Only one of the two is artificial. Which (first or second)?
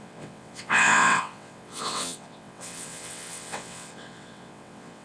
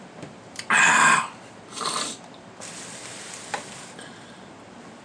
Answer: first